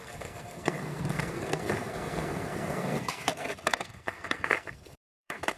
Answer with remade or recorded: remade